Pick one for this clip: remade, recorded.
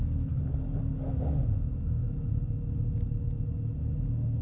recorded